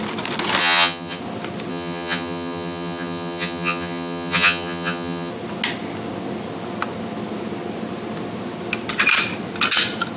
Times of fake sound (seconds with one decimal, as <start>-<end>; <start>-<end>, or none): 0.6-1.2; 1.7-5.3